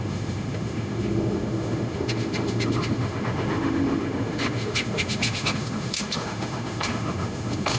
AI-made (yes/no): yes